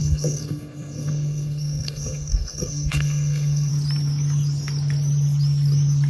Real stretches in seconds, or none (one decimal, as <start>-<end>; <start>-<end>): 3.7-6.1